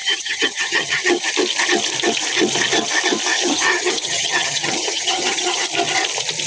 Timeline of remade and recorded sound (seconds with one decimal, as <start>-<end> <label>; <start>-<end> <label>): 0.0-1.3 remade; 1.3-3.3 recorded; 3.3-5.7 remade; 5.7-6.5 recorded